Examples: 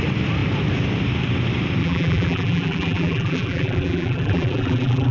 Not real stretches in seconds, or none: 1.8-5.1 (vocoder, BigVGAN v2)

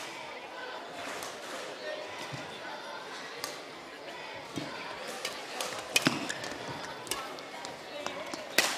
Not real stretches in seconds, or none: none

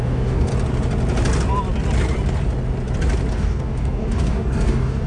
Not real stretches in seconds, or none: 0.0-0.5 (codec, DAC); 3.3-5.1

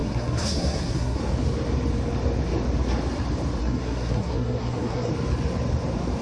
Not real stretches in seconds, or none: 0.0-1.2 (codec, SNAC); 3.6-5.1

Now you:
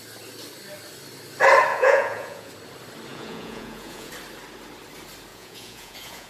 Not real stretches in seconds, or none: 1.7-2.5 (vocoder, Vocos); 3.1-4.1; 5.3-6.3

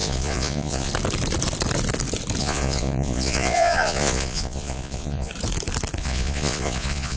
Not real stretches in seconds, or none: 0.0-0.9 (vocoder, Vocos); 2.4-5.3; 6.0-7.2

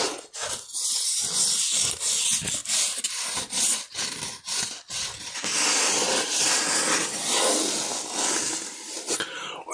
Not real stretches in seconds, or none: none

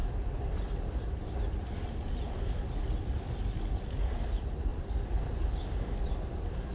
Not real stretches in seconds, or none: 0.0-4.0 (vocoder, BigVGAN v2); 4.7-5.3